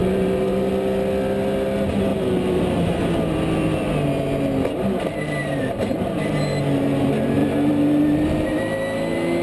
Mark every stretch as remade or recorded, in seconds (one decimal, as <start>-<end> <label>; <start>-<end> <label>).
0.0-0.7 remade; 0.7-2.1 recorded; 2.1-3.0 remade; 3.0-5.4 recorded; 5.4-6.4 remade; 6.4-7.4 recorded; 7.4-8.0 remade; 8.0-9.4 recorded